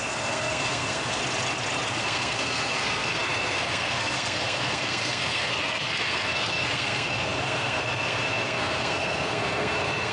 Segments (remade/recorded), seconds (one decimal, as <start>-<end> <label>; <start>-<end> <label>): 0.0-1.2 remade; 1.2-2.0 recorded; 2.0-10.1 remade